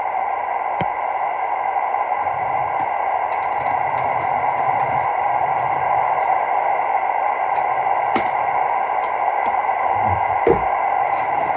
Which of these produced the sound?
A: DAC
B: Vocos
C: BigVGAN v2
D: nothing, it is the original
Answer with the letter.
C